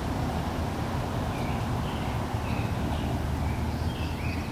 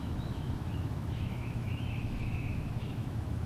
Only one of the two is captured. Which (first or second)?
first